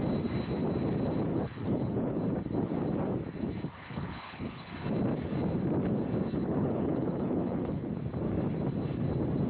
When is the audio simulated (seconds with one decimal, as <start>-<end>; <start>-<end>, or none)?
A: 1.3-2.2; 3.8-4.7; 6.4-7.9